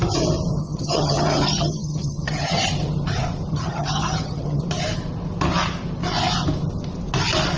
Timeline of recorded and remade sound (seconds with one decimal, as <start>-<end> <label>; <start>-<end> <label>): 0.0-0.6 recorded; 0.6-2.6 remade; 2.6-3.5 recorded; 3.5-4.6 remade; 4.6-7.6 recorded

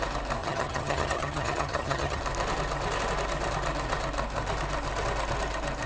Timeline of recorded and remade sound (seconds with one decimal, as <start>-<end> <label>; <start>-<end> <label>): 0.0-0.4 recorded; 0.4-2.2 remade; 2.2-5.9 recorded

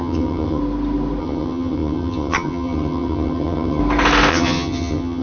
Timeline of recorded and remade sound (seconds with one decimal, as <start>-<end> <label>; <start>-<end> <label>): 0.0-0.6 remade; 0.6-1.2 recorded; 1.2-3.8 remade; 3.8-4.3 recorded; 4.3-5.2 remade

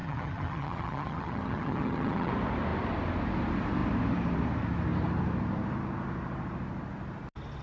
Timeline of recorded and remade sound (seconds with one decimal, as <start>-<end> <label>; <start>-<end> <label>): 0.0-2.3 remade; 2.3-7.6 recorded

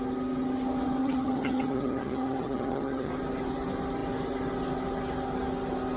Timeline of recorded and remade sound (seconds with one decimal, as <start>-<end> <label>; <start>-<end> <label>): 0.0-1.0 recorded; 1.0-3.1 remade; 3.1-6.0 recorded

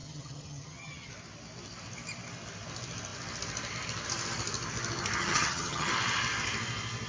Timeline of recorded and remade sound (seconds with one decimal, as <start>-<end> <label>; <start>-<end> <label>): 0.0-1.1 remade; 1.1-5.2 recorded; 5.2-5.9 remade; 5.9-7.1 recorded

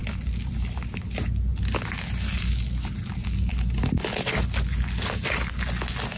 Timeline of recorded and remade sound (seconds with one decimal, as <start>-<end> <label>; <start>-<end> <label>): 0.0-6.2 recorded